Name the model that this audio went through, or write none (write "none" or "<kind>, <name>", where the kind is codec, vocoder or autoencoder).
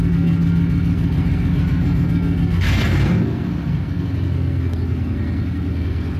codec, SNAC